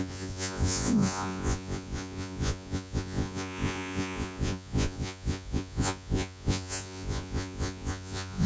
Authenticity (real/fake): fake